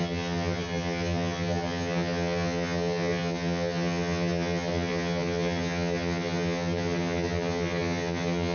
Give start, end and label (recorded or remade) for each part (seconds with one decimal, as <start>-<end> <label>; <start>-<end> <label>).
0.0-8.5 remade